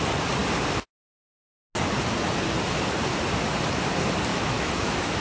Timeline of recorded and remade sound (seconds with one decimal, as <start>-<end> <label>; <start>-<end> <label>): 0.0-4.3 recorded; 4.3-5.2 remade